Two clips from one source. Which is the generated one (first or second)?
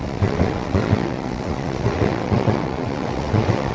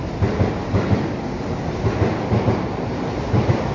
first